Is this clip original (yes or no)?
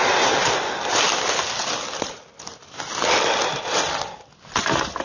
yes